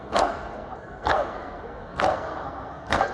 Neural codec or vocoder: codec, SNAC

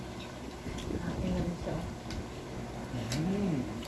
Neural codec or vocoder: none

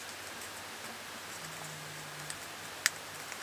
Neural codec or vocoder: none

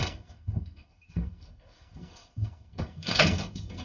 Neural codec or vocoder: codec, SNAC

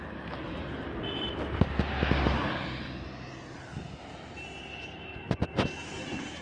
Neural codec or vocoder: none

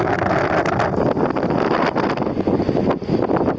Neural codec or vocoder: none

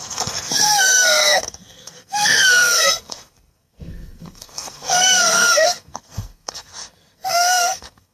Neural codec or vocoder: codec, SNAC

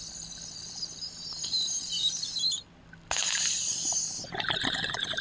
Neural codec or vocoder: none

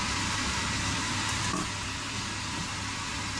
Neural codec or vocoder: none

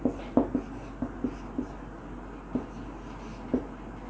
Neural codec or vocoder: none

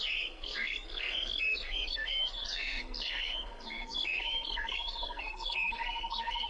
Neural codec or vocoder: codec, SNAC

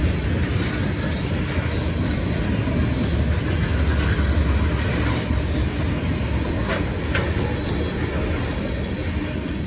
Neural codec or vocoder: none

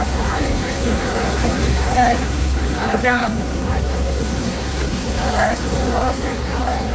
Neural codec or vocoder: codec, SNAC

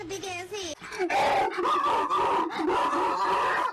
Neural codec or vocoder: none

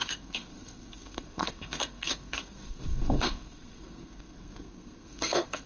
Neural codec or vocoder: codec, SNAC